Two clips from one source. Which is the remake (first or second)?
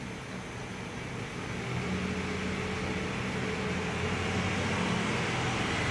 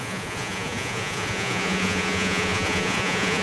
second